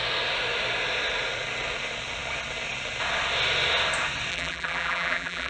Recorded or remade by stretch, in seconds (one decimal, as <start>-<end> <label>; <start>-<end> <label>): 0.0-4.3 recorded; 4.3-5.5 remade